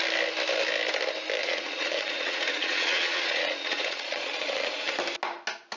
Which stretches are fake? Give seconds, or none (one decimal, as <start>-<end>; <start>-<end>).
1.4-4.9